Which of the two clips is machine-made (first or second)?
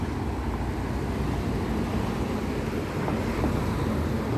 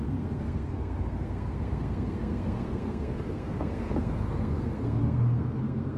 second